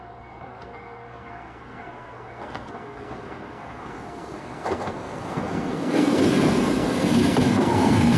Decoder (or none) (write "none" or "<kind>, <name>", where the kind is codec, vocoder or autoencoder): codec, SNAC